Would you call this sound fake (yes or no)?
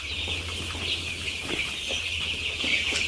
no